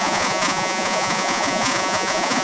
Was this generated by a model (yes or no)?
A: yes